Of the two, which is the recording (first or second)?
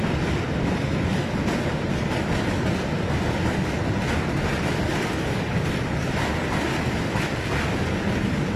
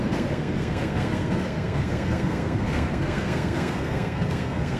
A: first